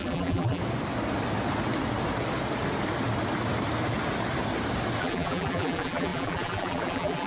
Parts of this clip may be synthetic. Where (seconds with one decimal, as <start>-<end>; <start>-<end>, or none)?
0.0-0.6; 5.0-7.3